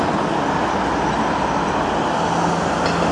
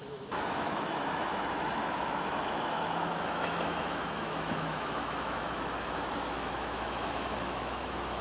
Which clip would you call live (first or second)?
first